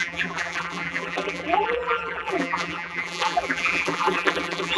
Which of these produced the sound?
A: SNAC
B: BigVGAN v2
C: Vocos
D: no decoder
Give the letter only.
B